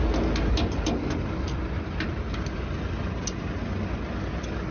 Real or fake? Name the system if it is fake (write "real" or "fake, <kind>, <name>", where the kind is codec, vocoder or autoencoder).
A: real